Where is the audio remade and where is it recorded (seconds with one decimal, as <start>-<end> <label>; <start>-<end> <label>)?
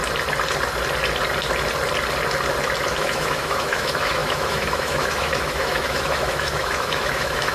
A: 0.0-3.0 recorded; 3.0-7.5 remade